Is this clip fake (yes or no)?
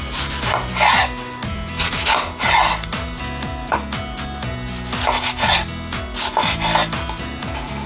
no